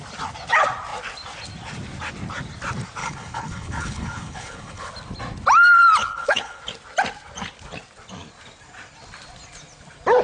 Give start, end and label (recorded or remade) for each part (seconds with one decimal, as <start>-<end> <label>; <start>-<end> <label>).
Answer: 0.0-3.0 recorded; 3.0-4.9 remade; 4.9-6.0 recorded; 6.0-6.6 remade; 6.6-10.2 recorded